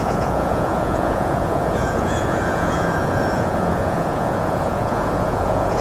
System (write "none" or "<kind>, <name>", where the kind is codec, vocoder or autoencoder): vocoder, Vocos